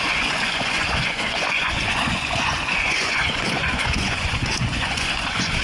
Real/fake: fake